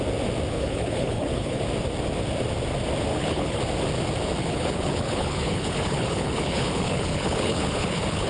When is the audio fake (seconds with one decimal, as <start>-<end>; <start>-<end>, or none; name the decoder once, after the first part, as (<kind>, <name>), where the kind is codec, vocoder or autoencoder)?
0.5-1.6 (codec, HILCodec); 3.1-3.6; 4.4-8.3